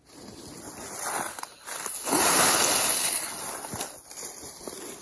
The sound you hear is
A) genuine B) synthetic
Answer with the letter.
A